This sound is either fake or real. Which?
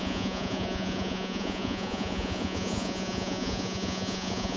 fake